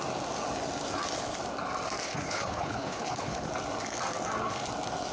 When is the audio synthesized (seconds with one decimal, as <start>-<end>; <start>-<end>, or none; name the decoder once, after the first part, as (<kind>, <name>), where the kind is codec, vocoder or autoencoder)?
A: 2.0-3.5 (codec, HILCodec)